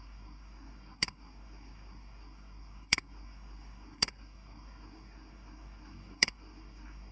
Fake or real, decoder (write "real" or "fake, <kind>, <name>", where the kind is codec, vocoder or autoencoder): fake, codec, SNAC